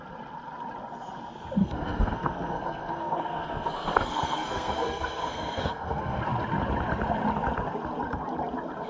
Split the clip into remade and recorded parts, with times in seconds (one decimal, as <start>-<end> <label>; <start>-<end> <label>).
0.0-1.6 recorded; 1.6-6.2 remade; 6.2-8.9 recorded